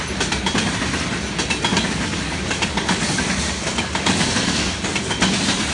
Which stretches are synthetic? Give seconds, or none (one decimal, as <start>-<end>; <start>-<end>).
1.7-5.1